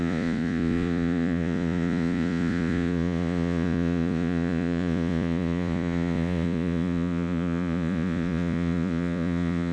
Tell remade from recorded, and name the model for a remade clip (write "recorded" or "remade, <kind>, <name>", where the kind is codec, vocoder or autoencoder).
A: remade, vocoder, Vocos